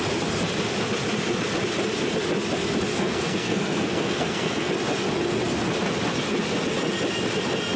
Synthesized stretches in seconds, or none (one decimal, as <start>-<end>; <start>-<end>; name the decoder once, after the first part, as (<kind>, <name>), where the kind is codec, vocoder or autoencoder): 2.9-4.7 (codec, SNAC)